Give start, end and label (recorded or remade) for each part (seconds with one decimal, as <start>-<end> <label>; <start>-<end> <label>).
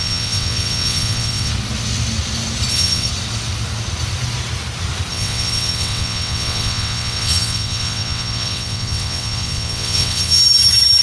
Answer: 0.0-1.5 remade; 1.5-2.7 recorded; 2.7-3.1 remade; 3.1-5.1 recorded; 5.1-10.4 remade; 10.4-11.0 recorded